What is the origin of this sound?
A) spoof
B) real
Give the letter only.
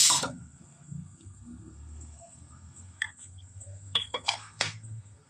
A